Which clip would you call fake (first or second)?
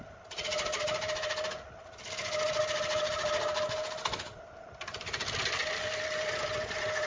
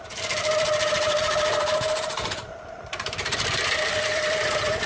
second